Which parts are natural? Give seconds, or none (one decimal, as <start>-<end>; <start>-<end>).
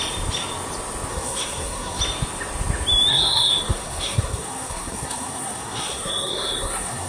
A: 0.0-1.1; 2.0-3.1